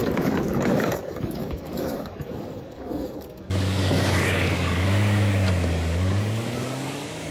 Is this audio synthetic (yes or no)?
yes